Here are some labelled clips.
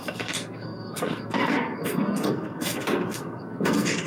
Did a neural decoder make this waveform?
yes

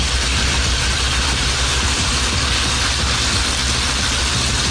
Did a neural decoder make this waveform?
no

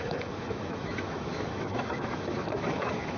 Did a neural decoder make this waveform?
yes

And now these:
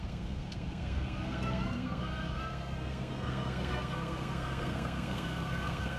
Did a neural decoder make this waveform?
yes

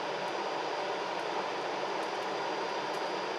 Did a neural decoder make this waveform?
no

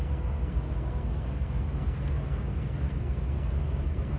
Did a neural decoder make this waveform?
yes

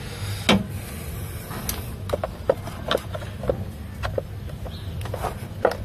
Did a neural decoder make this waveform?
no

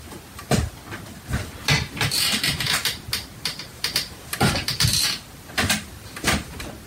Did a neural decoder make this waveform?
no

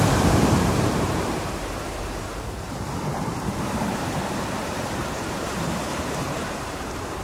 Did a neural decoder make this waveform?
yes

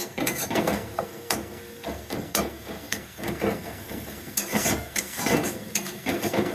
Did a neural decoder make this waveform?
yes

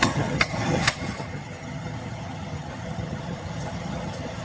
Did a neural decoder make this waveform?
yes